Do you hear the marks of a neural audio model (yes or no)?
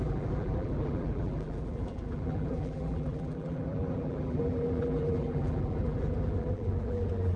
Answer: yes